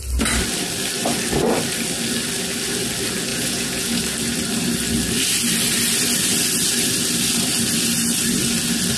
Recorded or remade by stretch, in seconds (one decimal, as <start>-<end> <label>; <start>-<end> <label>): 0.0-3.3 recorded; 3.3-4.0 remade; 4.0-9.0 recorded